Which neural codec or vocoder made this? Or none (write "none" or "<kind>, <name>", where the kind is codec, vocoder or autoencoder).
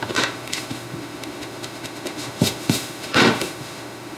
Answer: autoencoder, DAC-VAE